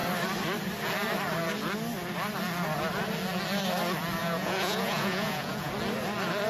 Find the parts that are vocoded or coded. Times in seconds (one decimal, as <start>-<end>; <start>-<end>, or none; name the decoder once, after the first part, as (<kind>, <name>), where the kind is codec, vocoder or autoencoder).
4.2-5.7 (vocoder, Vocos)